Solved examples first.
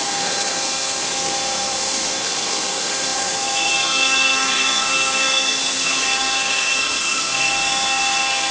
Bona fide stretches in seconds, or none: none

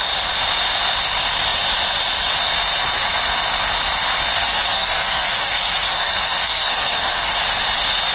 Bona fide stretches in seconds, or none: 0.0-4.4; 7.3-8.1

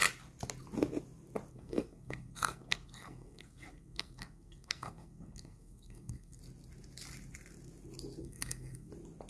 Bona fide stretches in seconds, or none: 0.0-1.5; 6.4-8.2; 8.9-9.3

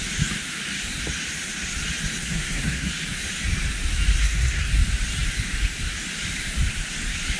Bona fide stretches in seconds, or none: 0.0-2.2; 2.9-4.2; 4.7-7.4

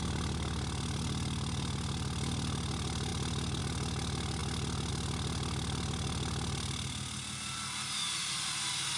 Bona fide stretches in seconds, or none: 0.0-9.0